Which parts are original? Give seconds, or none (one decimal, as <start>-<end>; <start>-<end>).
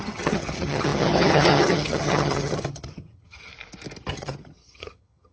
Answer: 3.5-4.1